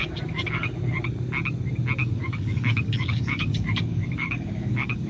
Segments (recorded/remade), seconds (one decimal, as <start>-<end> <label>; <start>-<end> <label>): 0.0-0.7 remade; 0.7-2.0 recorded; 2.0-5.1 remade